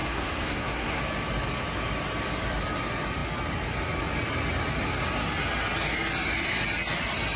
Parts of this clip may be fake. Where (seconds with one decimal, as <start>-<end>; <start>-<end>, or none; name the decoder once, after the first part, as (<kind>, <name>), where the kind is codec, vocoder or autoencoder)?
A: 0.0-1.0 (codec, SNAC)